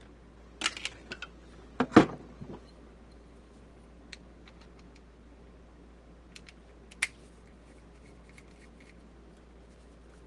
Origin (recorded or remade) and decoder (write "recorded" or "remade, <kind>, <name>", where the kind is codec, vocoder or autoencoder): recorded